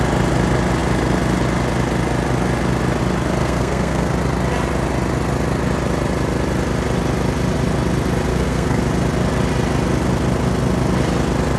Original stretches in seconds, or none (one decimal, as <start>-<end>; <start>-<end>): 0.0-3.4; 4.1-8.3; 8.8-11.6